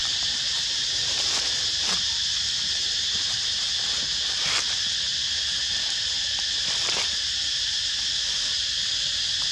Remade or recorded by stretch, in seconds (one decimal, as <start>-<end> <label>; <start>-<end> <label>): 0.0-3.6 remade; 3.6-9.5 recorded

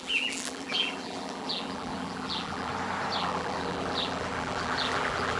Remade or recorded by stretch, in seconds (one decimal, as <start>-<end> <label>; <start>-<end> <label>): 0.0-2.7 remade; 2.7-3.2 recorded; 3.2-5.4 remade

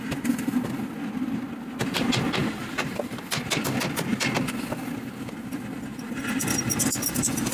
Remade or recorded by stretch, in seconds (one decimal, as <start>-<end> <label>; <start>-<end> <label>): 0.0-2.4 recorded; 2.4-3.2 remade; 3.2-5.9 recorded; 5.9-6.9 remade; 6.9-7.5 recorded

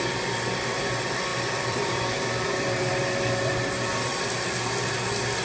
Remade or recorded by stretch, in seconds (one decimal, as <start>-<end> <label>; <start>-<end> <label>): 0.0-1.3 recorded; 1.3-3.5 remade; 3.5-5.4 recorded

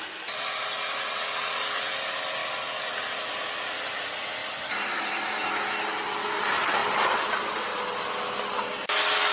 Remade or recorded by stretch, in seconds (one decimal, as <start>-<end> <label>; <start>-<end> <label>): 0.0-4.4 recorded; 4.4-5.5 remade; 5.5-9.3 recorded

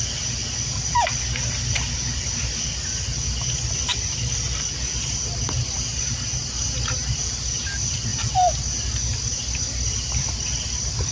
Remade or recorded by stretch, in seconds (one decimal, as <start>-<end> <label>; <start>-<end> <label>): 0.0-3.9 recorded; 3.9-4.7 remade; 4.7-8.1 recorded; 8.1-8.6 remade; 8.6-11.1 recorded

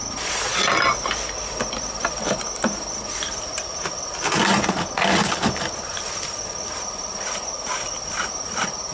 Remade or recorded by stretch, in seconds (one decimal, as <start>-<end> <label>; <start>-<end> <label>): 0.0-4.4 remade; 4.4-5.9 recorded; 5.9-8.9 remade